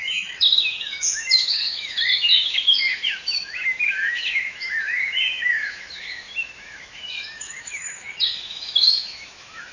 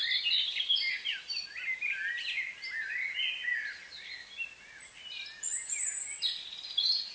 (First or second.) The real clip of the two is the second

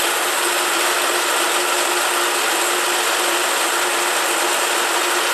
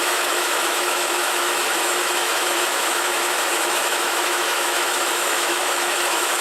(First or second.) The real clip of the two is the first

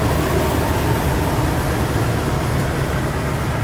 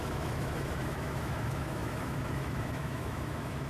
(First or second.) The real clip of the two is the first